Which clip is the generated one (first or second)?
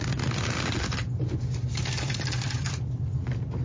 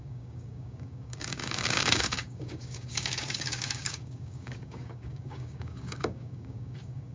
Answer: second